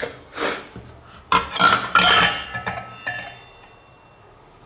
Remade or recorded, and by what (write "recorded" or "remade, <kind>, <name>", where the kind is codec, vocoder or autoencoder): recorded